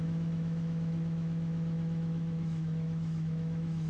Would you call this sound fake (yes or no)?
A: yes